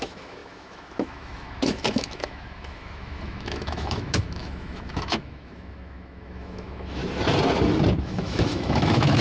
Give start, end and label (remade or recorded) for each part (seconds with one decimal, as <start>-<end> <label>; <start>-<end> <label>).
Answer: 0.0-7.0 remade; 7.0-8.0 recorded; 8.0-9.2 remade